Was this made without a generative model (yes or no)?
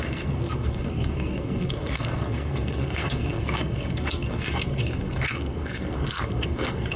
no